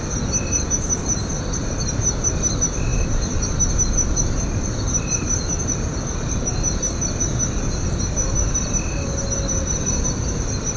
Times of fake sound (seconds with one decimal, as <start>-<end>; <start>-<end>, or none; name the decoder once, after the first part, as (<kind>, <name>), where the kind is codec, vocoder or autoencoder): none